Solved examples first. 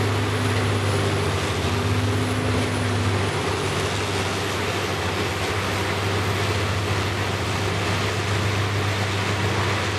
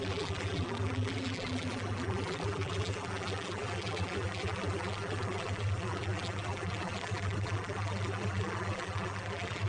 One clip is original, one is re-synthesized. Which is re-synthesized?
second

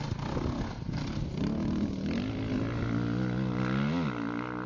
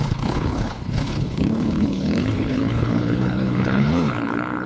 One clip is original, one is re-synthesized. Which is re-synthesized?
second